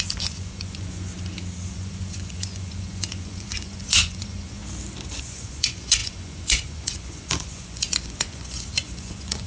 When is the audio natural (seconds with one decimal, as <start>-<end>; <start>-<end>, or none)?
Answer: 1.1-1.7; 4.6-5.2

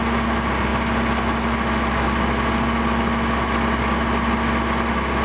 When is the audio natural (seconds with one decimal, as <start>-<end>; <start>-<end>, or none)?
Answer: 0.0-5.2